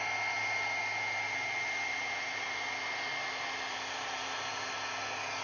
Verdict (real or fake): real